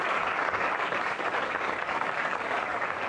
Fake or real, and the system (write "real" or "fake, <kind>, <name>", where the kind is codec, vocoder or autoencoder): fake, codec, DAC